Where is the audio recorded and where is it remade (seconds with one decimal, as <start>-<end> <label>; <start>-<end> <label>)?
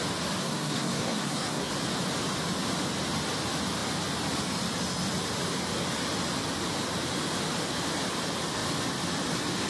0.0-0.4 recorded; 0.4-1.7 remade; 1.7-9.7 recorded